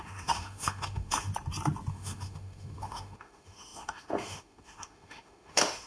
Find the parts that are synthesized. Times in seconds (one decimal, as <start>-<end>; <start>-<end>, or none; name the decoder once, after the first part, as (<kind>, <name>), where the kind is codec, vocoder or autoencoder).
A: 0.0-1.3 (autoencoder, DAC-VAE); 1.9-5.9